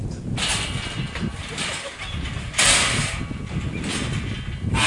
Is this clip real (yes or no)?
yes